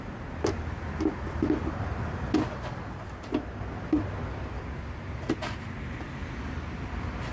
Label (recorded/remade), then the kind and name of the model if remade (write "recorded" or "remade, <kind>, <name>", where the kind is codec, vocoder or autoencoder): recorded